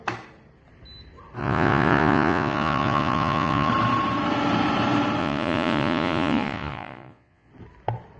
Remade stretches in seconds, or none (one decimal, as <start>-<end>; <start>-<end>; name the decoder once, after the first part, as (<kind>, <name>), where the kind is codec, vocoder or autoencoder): 1.4-3.7 (vocoder, Vocos); 5.2-7.5